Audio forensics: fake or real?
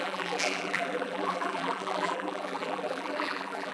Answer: fake